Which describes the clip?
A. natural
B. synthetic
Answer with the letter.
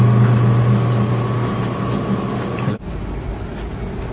A